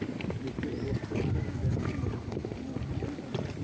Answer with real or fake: real